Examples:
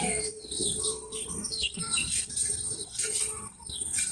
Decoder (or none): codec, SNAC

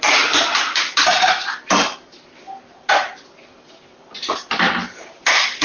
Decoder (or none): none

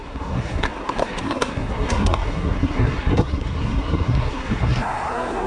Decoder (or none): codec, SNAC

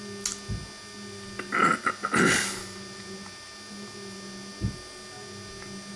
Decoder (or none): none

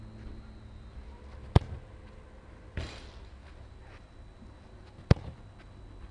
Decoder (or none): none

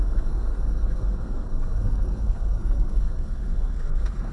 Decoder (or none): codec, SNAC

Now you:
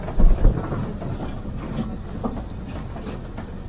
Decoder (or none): none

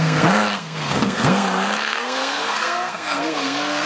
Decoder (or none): codec, SNAC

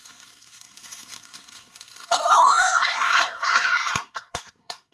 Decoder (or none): codec, SNAC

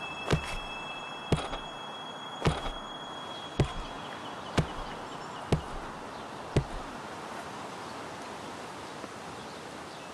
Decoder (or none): none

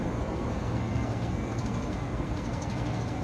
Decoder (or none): codec, SNAC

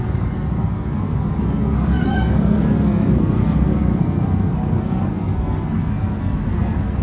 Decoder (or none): codec, SNAC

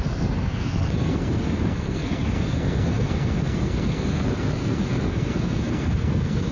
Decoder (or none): codec, SNAC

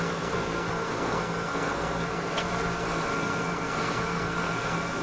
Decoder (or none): codec, SNAC